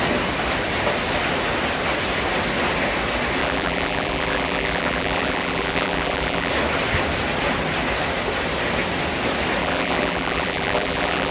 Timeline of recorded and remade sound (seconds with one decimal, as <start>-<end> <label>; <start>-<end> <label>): 0.0-3.4 recorded; 3.4-6.5 remade; 6.5-9.6 recorded; 9.6-11.3 remade